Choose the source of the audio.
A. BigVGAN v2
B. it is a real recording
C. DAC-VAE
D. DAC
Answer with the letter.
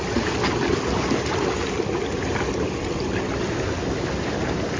B